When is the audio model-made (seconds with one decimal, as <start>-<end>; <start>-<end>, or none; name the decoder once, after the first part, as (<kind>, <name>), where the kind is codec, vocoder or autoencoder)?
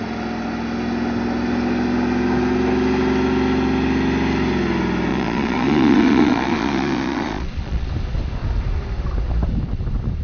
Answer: 5.1-7.9 (vocoder, Vocos)